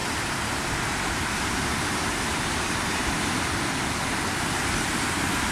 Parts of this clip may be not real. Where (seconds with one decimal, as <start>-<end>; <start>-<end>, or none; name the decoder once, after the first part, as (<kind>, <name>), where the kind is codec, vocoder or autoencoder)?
0.0-3.3 (vocoder, BigVGAN v2)